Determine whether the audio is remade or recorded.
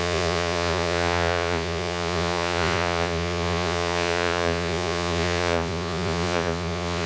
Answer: remade